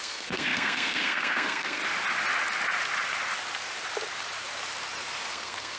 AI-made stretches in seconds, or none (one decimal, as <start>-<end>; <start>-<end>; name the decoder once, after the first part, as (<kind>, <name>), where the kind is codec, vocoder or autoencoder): 0.0-1.8 (codec, SNAC); 5.3-5.8